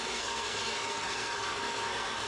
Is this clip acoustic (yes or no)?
no